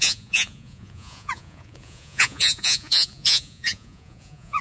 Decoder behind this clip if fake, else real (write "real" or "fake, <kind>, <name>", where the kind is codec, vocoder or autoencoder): fake, vocoder, Vocos